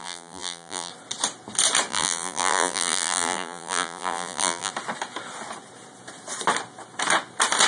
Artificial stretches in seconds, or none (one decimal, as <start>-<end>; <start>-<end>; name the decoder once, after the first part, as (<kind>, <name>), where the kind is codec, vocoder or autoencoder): 0.0-0.9 (vocoder, BigVGAN v2); 1.9-4.7